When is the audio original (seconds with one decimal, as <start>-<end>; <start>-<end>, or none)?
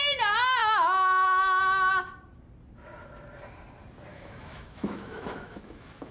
0.0-0.6; 1.6-4.1